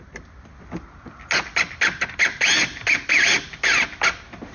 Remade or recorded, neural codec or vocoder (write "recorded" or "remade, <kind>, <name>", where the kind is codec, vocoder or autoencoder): recorded